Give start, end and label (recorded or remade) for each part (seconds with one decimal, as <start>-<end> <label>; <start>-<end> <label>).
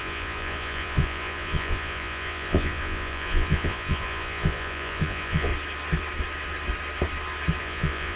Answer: 0.0-5.5 remade; 5.5-7.6 recorded; 7.6-8.2 remade